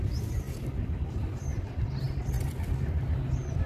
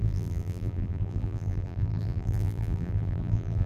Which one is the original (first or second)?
first